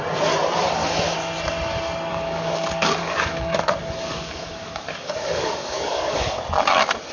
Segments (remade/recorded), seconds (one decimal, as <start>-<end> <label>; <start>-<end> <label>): 0.0-2.1 recorded; 2.1-6.4 remade; 6.4-7.1 recorded